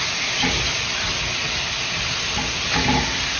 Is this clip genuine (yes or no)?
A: yes